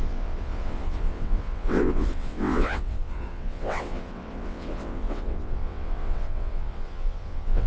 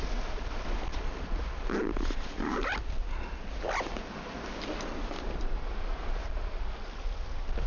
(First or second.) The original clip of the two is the second